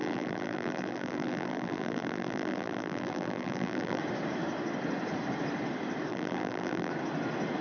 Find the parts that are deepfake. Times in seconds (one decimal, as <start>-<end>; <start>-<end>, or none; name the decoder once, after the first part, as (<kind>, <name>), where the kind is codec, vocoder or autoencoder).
0.0-4.0 (vocoder, BigVGAN v2); 6.1-6.9